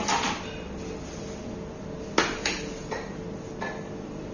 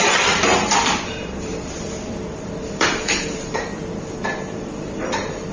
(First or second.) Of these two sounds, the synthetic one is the second